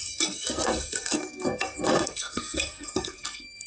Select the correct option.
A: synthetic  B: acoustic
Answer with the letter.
A